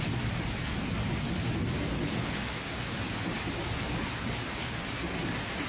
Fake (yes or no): no